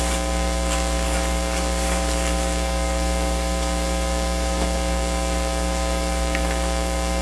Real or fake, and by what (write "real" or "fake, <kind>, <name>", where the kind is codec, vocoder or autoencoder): fake, codec, DAC